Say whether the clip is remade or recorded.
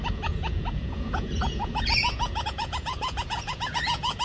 remade